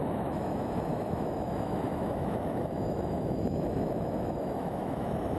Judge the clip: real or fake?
fake